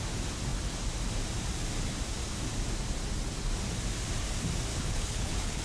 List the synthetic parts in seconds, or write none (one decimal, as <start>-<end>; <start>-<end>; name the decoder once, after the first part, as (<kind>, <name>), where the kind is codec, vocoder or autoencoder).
4.7-5.6 (codec, HILCodec)